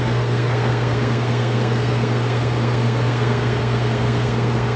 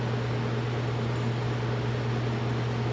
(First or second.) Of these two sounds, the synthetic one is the first